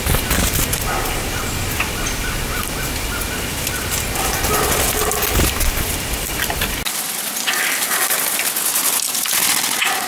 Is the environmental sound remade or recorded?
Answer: recorded